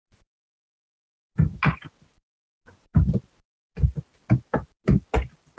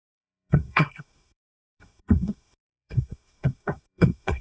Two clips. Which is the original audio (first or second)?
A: first